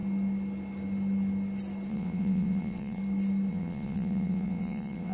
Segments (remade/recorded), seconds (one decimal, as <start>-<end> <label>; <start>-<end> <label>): 0.0-1.9 recorded; 1.9-3.0 remade; 3.0-3.5 recorded; 3.5-5.1 remade